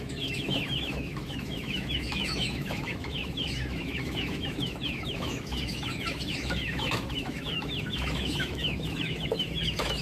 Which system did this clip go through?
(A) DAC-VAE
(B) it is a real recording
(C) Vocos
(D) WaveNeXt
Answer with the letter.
A